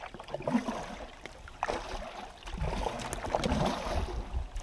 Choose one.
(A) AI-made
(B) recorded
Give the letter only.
B